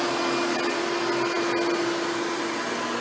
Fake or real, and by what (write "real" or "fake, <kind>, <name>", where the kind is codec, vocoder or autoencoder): real